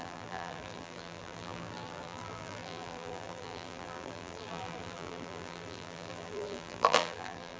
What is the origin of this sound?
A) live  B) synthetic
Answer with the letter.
B